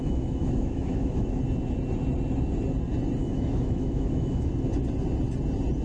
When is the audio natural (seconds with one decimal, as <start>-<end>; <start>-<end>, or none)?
1.4-3.2; 4.5-5.8